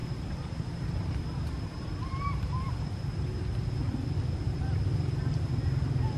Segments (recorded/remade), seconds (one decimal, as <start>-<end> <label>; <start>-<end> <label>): 0.0-3.6 remade; 3.6-6.2 recorded